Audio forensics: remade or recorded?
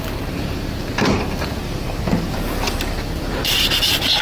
remade